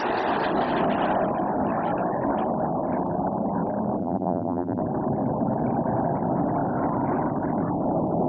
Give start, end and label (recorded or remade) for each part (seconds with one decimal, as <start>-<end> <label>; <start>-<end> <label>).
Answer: 0.0-4.0 recorded; 4.0-4.8 remade; 4.8-8.3 recorded

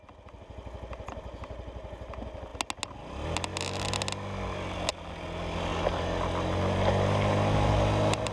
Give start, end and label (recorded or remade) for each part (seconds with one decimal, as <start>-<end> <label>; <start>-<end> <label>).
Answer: 0.0-8.3 recorded

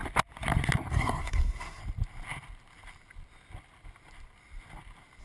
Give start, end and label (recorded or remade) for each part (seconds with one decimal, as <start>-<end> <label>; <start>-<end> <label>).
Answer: 0.0-0.9 recorded; 0.9-1.8 remade; 1.8-5.2 recorded

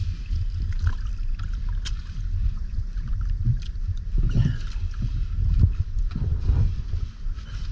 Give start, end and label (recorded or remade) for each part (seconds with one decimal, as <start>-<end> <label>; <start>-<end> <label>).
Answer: 0.0-2.4 recorded; 2.4-2.9 remade; 2.9-7.7 recorded